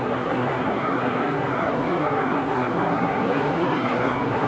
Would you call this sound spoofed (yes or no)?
yes